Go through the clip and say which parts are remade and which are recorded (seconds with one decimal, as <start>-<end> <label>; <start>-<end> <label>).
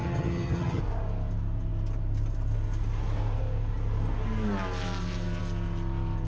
0.0-0.8 remade; 0.8-6.3 recorded